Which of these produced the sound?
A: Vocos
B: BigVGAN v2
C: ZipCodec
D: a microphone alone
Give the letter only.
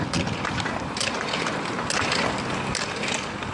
D